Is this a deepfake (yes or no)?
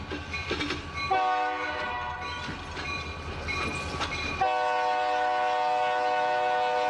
no